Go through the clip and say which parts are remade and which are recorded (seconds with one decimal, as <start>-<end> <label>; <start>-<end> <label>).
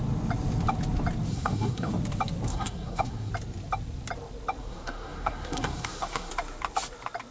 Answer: 0.0-1.3 recorded; 1.3-1.9 remade; 1.9-2.5 recorded; 2.5-3.3 remade; 3.3-4.6 recorded; 4.6-6.3 remade; 6.3-7.3 recorded